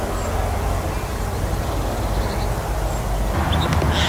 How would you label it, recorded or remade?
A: recorded